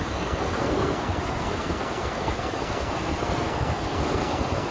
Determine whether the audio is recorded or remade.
remade